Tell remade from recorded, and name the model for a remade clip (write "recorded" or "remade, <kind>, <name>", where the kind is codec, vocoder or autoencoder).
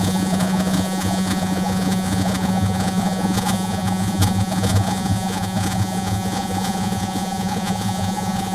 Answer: remade, vocoder, Vocos